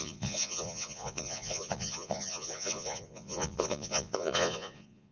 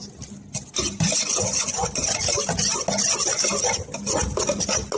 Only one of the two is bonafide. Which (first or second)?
second